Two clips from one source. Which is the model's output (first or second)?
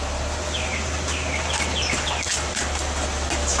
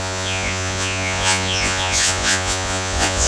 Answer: second